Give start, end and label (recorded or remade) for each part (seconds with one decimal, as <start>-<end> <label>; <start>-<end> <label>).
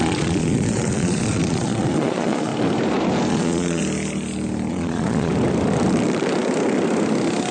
0.0-2.5 remade; 2.5-3.3 recorded; 3.3-3.8 remade; 3.8-4.7 recorded; 4.7-5.3 remade; 5.3-7.5 recorded